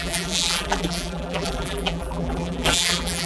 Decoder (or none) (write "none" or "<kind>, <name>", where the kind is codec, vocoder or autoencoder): vocoder, BigVGAN v2